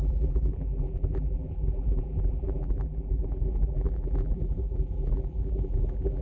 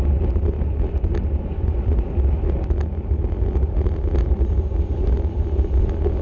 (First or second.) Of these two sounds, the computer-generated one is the first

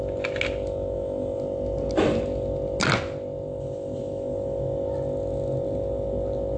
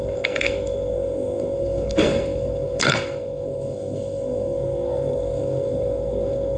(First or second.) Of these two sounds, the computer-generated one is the second